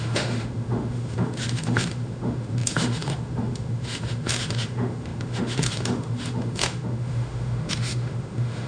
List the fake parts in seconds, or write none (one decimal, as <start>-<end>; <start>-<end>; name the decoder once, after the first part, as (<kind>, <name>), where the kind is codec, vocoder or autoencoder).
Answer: 0.0-8.7 (autoencoder, DAC-VAE)